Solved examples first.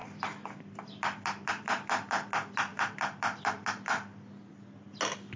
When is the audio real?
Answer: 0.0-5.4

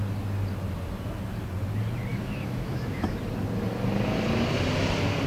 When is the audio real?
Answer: 0.0-2.1; 3.2-5.3

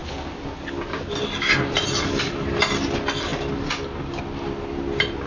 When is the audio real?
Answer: 0.0-5.3

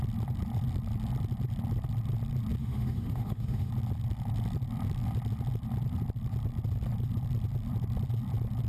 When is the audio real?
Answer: 0.0-2.6; 3.7-8.7

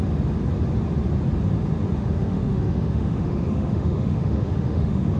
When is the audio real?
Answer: 0.0-2.0

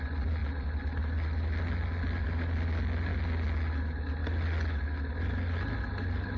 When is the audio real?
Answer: 0.0-6.4

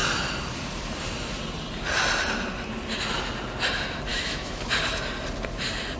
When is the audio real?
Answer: 0.0-4.1; 4.6-6.0